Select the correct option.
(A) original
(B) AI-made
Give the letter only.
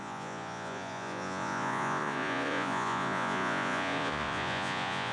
B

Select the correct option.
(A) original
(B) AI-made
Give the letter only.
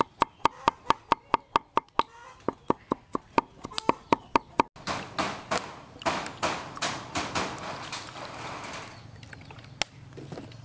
A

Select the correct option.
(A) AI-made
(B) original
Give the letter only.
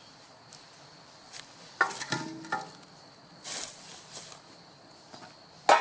B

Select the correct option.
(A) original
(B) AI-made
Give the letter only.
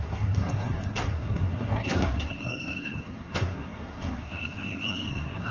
B